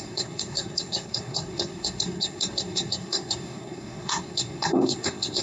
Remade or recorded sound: remade